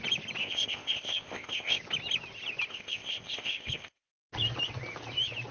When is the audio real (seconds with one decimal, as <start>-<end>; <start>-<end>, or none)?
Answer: 0.0-0.4; 1.8-2.7; 4.1-5.5